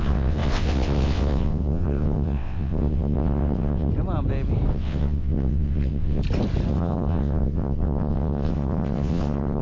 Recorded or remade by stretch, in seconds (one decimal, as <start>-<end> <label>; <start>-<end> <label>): 0.0-3.9 remade; 3.9-4.7 recorded; 4.7-6.2 remade; 6.2-6.7 recorded; 6.7-9.6 remade